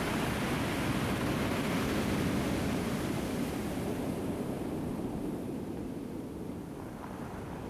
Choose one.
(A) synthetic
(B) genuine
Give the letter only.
B